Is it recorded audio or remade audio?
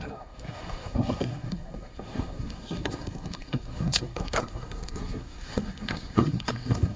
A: remade